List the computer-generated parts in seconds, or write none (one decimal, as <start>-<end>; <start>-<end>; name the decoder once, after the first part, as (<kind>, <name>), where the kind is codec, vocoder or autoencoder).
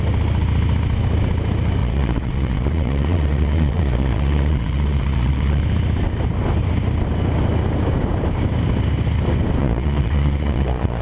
1.8-5.6 (vocoder, Vocos); 9.6-11.0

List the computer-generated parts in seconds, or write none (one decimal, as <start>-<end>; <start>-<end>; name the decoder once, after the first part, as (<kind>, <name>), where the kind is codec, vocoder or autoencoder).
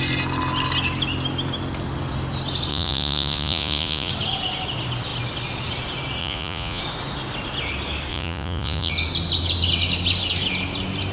2.7-4.1 (vocoder, Vocos); 6.2-6.8; 8.1-8.9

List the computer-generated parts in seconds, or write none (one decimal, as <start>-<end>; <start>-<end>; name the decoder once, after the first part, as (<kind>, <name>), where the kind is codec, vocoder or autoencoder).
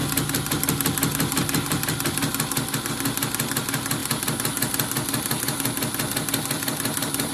none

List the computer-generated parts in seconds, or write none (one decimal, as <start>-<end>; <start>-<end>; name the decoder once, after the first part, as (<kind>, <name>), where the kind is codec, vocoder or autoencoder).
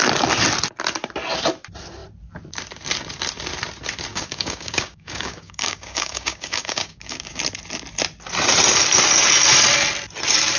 4.1-7.4 (codec, DAC)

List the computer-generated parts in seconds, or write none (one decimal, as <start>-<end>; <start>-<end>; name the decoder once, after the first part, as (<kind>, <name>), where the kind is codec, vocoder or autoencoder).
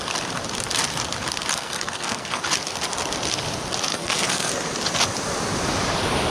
1.5-2.4 (codec, SNAC); 3.9-4.5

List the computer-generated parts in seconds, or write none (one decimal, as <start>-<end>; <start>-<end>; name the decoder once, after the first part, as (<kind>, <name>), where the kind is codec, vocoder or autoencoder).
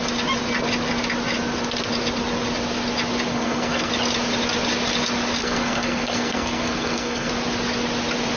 3.3-3.9 (codec, SNAC); 5.4-7.3